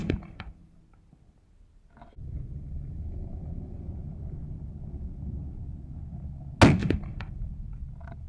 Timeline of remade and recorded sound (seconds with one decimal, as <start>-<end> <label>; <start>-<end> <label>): 0.0-0.8 remade; 0.8-2.2 recorded; 2.2-3.0 remade; 3.0-6.8 recorded; 6.8-7.5 remade; 7.5-8.3 recorded